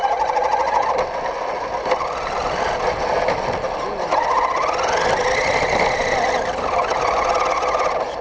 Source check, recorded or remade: recorded